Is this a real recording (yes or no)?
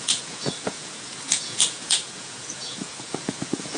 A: no